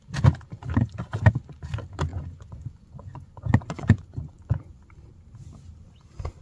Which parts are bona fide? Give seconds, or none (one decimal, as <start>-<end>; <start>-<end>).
0.0-2.1; 4.8-6.4